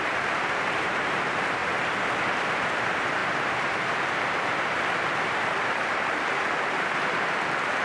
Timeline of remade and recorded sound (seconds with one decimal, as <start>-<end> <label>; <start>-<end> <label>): 0.0-1.6 remade; 1.6-2.4 recorded; 2.4-7.8 remade